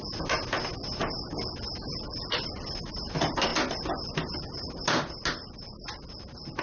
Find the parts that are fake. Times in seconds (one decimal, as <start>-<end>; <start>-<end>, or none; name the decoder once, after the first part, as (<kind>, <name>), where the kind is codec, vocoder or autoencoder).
none